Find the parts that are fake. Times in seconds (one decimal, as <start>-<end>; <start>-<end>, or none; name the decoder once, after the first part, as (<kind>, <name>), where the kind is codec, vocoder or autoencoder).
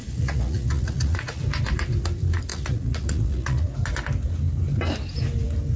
0.0-1.4 (vocoder, Vocos); 2.5-3.7